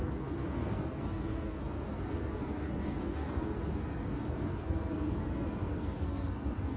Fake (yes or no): yes